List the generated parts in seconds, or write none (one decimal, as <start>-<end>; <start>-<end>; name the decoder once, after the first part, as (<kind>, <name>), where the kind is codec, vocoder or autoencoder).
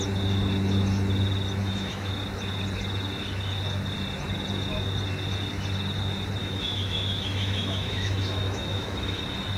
1.6-2.1 (autoencoder, DAC-VAE); 6.4-9.2